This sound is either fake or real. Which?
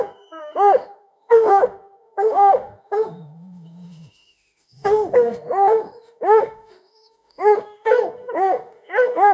fake